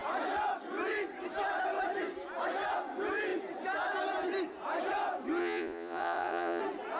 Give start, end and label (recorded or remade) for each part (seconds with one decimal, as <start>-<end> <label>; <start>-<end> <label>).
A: 0.0-5.4 recorded; 5.4-6.6 remade; 6.6-7.0 recorded